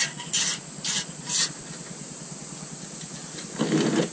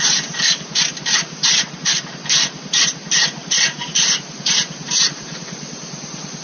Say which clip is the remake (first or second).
second